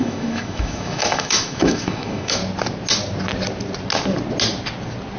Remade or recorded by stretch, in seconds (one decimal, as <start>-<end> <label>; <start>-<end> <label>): 0.0-2.4 remade; 2.4-5.2 recorded